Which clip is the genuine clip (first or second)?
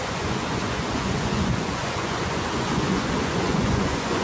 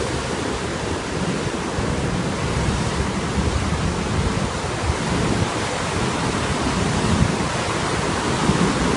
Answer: second